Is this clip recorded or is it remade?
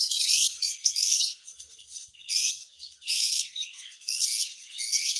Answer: remade